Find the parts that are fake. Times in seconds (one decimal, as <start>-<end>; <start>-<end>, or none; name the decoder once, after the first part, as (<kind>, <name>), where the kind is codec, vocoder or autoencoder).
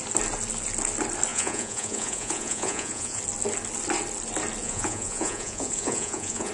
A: 1.3-3.2 (vocoder, Vocos); 4.6-6.5